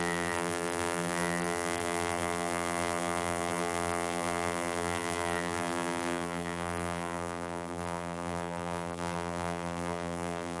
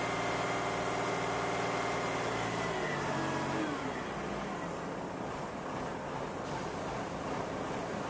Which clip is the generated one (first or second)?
first